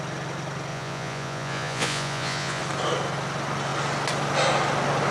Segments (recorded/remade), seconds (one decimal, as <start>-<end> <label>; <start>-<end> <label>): 0.0-0.7 recorded; 0.7-2.6 remade; 2.6-5.1 recorded